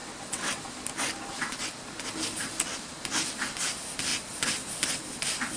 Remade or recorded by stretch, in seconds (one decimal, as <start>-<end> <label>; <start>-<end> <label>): 0.0-0.6 remade; 0.6-5.6 recorded